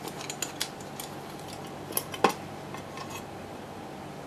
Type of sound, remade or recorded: recorded